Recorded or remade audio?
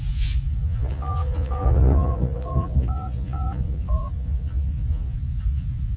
remade